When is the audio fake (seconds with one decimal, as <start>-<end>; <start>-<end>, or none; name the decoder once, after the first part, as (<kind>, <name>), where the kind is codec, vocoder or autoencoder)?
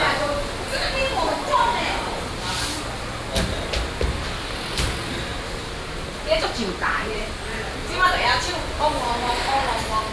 1.0-2.3 (vocoder, BigVGAN v2); 5.3-7.2